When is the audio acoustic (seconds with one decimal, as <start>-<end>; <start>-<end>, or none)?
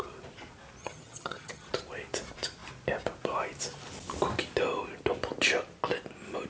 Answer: 0.0-0.8; 1.7-6.5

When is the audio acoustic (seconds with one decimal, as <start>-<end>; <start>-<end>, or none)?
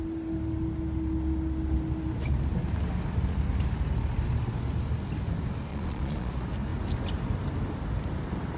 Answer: 0.0-5.7; 6.3-8.6